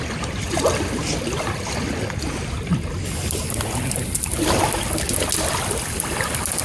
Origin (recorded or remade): recorded